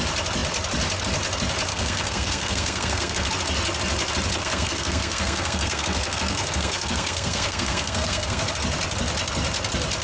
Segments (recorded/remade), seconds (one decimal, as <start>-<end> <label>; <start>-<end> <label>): 0.0-1.7 recorded; 1.7-3.3 remade; 3.3-4.4 recorded; 4.4-8.5 remade; 8.5-10.0 recorded